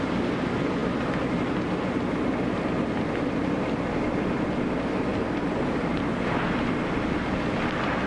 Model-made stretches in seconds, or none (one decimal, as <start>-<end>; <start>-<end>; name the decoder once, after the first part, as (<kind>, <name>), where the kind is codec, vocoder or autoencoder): 5.1-6.2 (vocoder, BigVGAN v2)

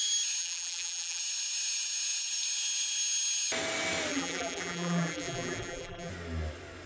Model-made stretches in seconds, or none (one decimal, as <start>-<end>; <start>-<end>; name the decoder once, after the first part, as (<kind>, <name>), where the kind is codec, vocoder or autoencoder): 0.4-1.2 (vocoder, BigVGAN v2); 4.1-6.1

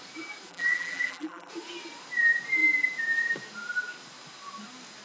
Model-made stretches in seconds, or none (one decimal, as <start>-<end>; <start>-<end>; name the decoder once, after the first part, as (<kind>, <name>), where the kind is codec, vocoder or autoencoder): 0.5-1.5 (vocoder, BigVGAN v2)

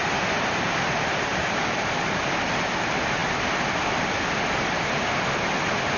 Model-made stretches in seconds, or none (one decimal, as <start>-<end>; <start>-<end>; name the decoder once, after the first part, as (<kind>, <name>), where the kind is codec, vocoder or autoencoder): 1.3-2.2 (vocoder, BigVGAN v2)

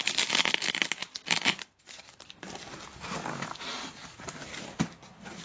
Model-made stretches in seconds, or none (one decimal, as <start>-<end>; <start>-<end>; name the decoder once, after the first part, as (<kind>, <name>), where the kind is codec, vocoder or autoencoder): none